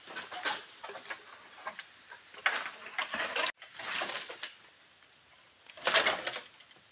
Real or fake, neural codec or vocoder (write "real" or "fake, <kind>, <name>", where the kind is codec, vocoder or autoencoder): real